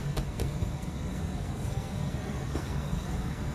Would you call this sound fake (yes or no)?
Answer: yes